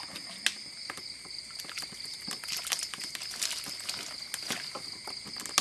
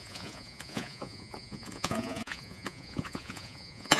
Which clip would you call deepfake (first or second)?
second